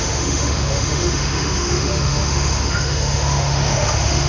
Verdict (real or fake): fake